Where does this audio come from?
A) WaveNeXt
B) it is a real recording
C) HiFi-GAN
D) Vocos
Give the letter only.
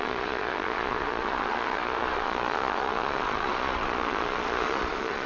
D